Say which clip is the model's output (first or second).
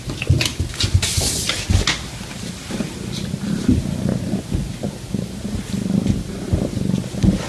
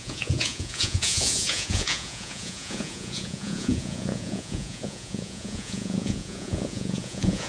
second